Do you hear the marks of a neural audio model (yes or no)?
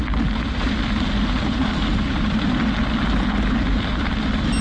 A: no